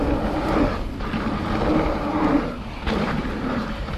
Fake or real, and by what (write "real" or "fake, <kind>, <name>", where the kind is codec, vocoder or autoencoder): real